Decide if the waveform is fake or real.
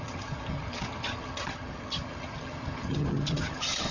fake